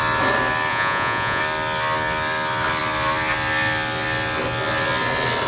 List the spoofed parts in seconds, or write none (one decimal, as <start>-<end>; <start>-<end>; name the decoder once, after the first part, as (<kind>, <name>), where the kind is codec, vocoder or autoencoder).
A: 0.7-1.4 (vocoder, Vocos)